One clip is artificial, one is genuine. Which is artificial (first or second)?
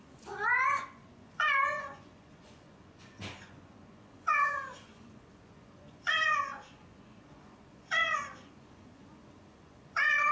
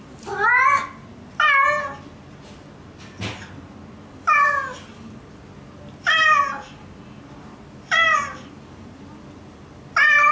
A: first